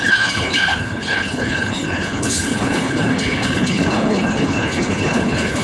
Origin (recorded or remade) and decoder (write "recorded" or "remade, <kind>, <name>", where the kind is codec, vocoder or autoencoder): remade, codec, HILCodec